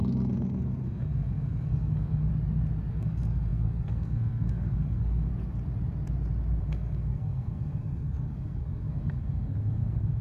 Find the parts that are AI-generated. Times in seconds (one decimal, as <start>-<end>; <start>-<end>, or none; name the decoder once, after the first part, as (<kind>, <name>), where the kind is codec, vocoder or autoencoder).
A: 0.0-2.3 (codec, SNAC); 2.9-5.3; 6.6-10.2